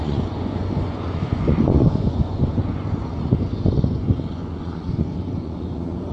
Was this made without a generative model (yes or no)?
no